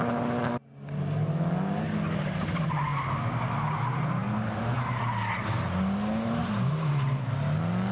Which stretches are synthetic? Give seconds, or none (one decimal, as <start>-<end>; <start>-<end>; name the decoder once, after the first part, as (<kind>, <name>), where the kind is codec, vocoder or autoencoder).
none